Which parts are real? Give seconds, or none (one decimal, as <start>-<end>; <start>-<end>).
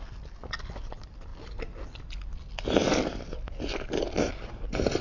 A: 0.0-5.0